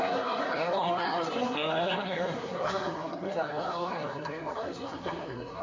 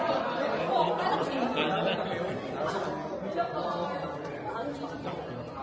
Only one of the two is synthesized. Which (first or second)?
first